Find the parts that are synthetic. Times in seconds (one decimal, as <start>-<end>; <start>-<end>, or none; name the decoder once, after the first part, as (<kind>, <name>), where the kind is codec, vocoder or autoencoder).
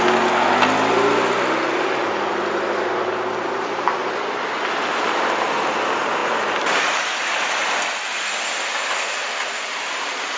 none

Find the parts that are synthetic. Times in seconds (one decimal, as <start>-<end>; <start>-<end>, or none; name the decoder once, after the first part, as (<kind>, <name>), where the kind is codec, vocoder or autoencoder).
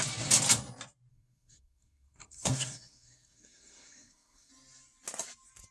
1.1-4.5 (codec, SNAC)